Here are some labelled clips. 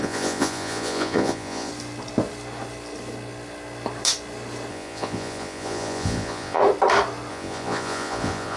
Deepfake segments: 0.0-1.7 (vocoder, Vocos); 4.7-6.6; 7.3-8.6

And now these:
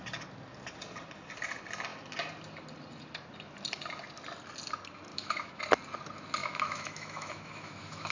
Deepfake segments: 5.1-5.6 (autoencoder, DAC-VAE); 6.4-8.1

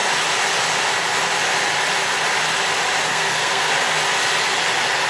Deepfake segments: 3.1-3.7 (codec, SNAC)

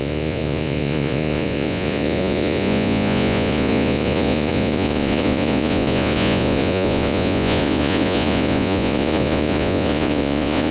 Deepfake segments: 0.0-10.7 (vocoder, Vocos)

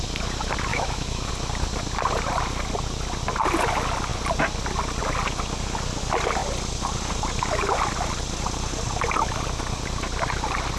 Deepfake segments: 0.7-1.3 (autoencoder, DAC-VAE)

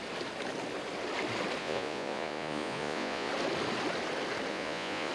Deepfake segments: 1.6-3.3 (vocoder, Vocos); 4.5-5.1

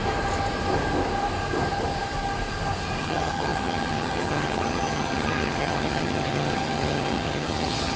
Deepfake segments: 3.0-8.0 (vocoder, HiFi-GAN)

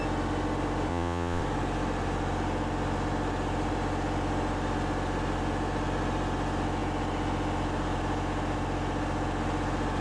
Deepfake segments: 0.9-1.4 (vocoder, Vocos)